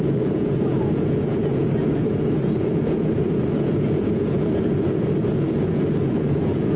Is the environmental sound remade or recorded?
remade